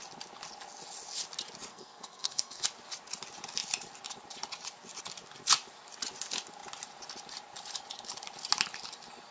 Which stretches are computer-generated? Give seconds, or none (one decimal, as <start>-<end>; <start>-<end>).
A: 1.7-2.6